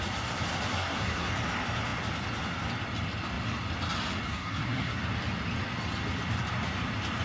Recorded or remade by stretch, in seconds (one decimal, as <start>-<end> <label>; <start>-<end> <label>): 0.0-0.7 recorded; 0.7-1.3 remade; 1.3-4.3 recorded; 4.3-5.0 remade; 5.0-7.2 recorded